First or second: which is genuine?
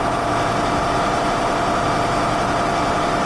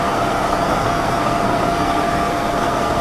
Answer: first